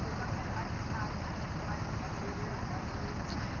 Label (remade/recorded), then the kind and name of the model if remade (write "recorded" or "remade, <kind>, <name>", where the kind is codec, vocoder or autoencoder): recorded